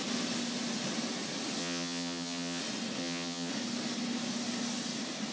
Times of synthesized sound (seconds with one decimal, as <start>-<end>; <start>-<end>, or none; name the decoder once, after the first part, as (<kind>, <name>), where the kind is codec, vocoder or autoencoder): 1.6-2.6 (vocoder, HiFi-GAN); 3.0-3.5